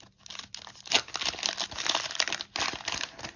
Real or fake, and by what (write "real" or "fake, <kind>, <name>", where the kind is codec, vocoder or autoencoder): real